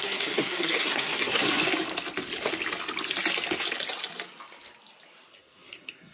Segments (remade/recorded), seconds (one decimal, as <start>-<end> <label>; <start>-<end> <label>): 0.0-1.6 remade; 1.6-5.3 recorded; 5.3-6.1 remade